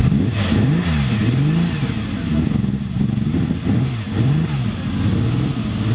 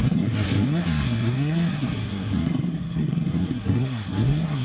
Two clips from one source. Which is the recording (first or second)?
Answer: first